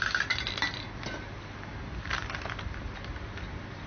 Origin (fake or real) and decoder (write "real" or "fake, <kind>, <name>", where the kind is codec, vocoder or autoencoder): real